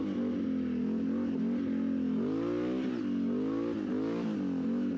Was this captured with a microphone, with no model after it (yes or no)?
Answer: yes